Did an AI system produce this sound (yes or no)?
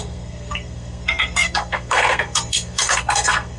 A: yes